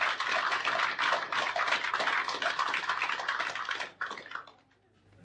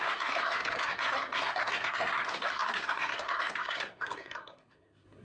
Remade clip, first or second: second